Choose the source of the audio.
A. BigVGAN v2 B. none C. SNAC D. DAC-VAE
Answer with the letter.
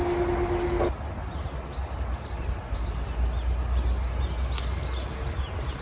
B